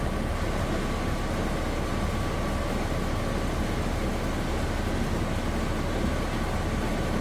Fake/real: real